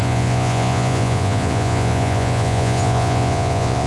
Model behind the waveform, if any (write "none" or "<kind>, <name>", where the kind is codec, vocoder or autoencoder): vocoder, Vocos